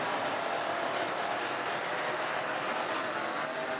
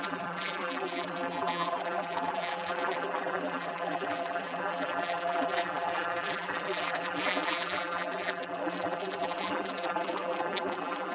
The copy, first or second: second